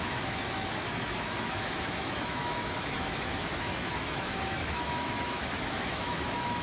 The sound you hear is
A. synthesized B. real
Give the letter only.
A